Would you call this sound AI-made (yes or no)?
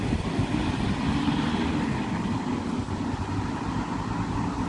no